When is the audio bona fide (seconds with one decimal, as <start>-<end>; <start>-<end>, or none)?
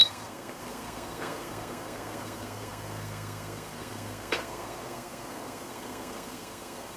none